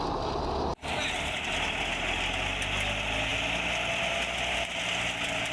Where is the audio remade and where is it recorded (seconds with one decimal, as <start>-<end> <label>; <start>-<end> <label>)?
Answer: 0.0-5.5 recorded